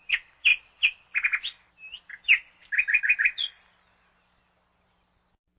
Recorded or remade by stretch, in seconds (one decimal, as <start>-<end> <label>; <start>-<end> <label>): 0.0-5.6 recorded